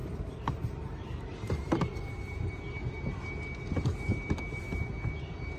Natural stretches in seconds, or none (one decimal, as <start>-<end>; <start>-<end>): 2.5-5.6